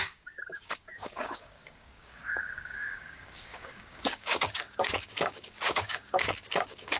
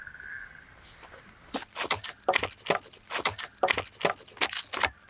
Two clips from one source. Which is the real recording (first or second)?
second